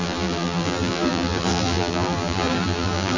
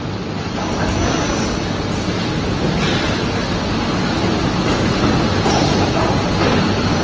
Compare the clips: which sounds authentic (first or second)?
second